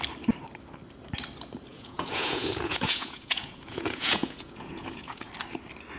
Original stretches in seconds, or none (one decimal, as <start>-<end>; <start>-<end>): 0.0-1.7; 5.3-6.0

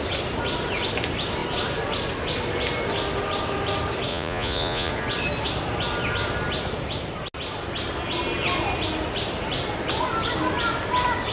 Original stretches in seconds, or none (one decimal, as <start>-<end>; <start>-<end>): 0.0-4.1; 4.9-11.3